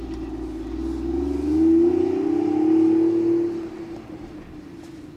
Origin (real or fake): real